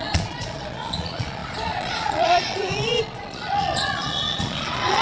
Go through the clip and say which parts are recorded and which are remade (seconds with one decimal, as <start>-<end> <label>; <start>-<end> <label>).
0.0-5.0 remade